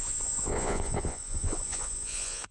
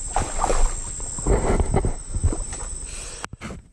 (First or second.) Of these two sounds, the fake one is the first